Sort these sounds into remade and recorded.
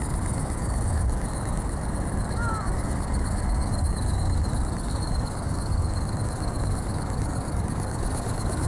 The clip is remade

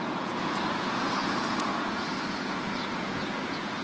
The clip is remade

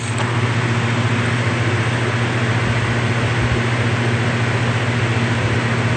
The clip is recorded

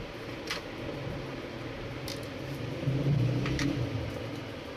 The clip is recorded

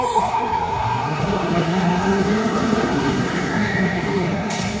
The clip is remade